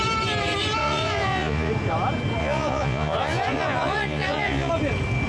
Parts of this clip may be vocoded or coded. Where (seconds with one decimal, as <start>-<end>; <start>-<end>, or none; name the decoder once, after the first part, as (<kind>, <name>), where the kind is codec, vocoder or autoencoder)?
0.8-1.7 (vocoder, Vocos); 2.4-4.7